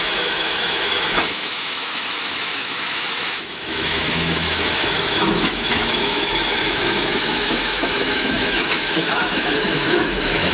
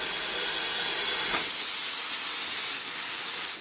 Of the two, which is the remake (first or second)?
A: first